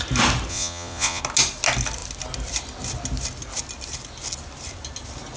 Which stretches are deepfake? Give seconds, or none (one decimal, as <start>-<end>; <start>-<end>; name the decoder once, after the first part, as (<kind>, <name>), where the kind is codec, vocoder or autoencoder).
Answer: 0.5-1.2 (vocoder, Vocos)